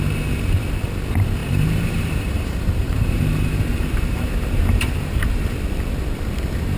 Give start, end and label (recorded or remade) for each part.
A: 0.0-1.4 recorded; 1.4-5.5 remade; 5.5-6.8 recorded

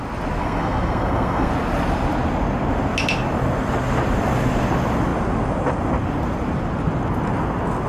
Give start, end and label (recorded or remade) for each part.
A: 0.0-0.4 recorded; 0.4-1.5 remade; 1.5-7.9 recorded

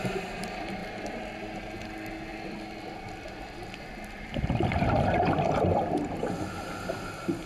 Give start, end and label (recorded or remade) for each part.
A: 0.0-0.8 recorded; 0.8-1.4 remade; 1.4-2.3 recorded; 2.3-6.6 remade; 6.6-7.5 recorded

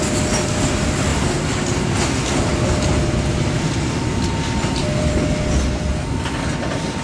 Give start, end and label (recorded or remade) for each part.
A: 0.0-7.0 recorded

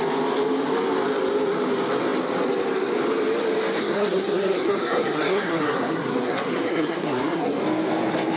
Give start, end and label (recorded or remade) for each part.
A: 0.0-3.8 recorded; 3.8-7.6 remade; 7.6-8.4 recorded

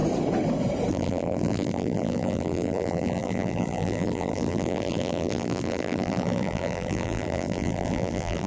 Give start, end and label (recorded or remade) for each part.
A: 0.0-0.9 recorded; 0.9-8.5 remade